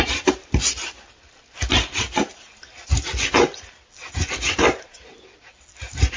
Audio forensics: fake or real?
real